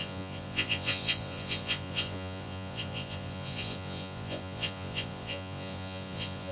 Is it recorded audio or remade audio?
remade